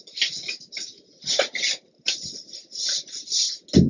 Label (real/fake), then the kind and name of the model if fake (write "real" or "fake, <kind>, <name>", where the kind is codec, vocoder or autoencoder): real